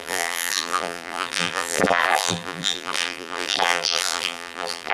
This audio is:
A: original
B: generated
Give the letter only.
B